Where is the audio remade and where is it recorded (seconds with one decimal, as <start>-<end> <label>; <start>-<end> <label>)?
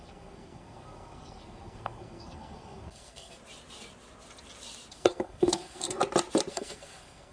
0.0-3.4 remade; 3.4-4.9 recorded; 4.9-6.0 remade; 6.0-6.5 recorded; 6.5-7.3 remade